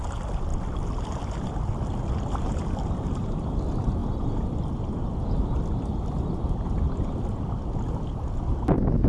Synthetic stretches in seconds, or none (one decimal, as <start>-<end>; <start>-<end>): none